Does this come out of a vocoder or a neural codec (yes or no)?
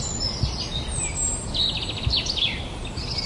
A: no